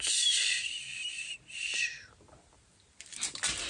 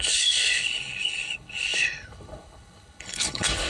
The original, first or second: first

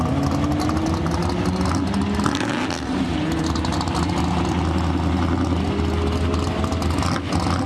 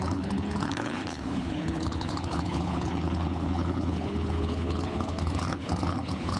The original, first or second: first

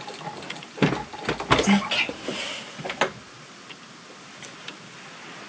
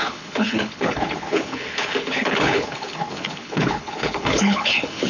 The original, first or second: first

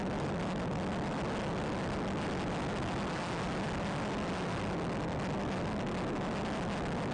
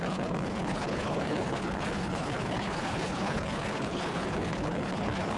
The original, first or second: first